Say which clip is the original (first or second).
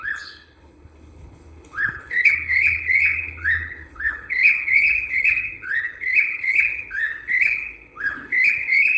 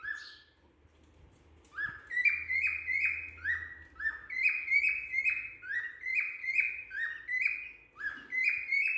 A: second